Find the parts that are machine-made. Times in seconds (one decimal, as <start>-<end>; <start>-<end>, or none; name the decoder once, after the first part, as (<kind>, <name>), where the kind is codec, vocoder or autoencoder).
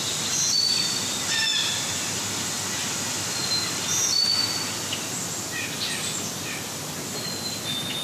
1.5-2.2 (vocoder, BigVGAN v2)